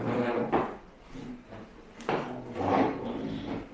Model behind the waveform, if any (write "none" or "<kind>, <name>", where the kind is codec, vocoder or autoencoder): none